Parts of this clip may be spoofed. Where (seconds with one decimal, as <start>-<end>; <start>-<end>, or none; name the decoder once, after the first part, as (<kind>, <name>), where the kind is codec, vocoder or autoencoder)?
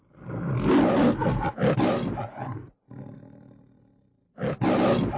none